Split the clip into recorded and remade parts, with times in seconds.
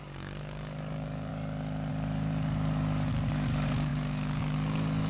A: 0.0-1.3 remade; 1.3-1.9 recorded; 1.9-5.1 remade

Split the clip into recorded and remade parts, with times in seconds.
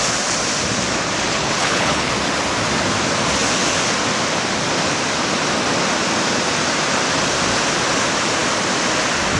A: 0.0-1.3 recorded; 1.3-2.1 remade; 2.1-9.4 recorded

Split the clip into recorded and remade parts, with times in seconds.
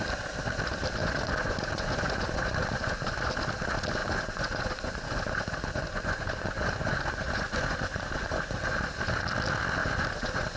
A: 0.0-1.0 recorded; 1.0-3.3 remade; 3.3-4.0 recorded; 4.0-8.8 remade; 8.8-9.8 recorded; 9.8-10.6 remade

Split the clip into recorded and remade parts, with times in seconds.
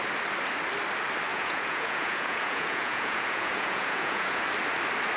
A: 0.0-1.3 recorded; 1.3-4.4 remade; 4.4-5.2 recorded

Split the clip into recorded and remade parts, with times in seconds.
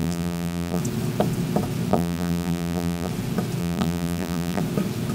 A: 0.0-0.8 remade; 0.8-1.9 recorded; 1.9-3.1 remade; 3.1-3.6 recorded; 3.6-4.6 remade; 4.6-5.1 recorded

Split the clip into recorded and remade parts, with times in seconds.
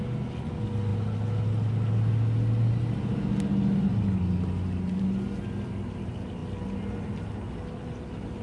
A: 0.0-8.4 recorded